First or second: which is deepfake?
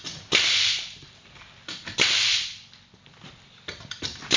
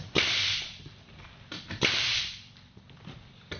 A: second